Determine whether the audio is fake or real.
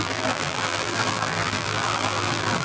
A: fake